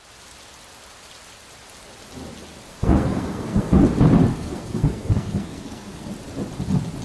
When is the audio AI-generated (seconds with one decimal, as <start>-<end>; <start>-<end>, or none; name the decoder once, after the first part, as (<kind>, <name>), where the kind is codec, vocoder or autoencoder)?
2.7-3.8 (codec, SNAC); 4.3-6.1